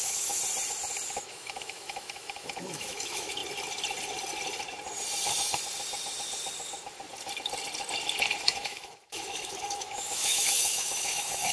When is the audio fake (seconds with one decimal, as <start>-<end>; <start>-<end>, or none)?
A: 0.0-0.4; 1.2-3.4; 8.4-11.5